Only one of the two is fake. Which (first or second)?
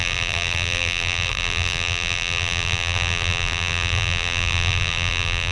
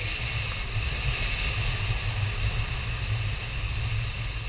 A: first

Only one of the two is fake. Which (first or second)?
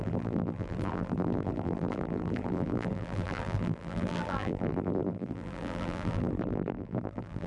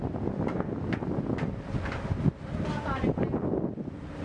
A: first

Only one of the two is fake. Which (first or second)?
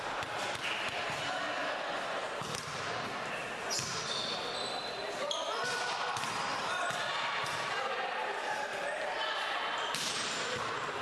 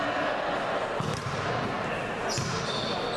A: first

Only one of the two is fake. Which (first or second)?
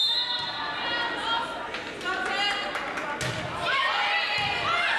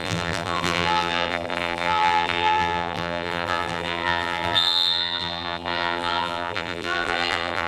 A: second